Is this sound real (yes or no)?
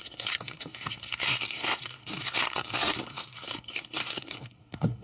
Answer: no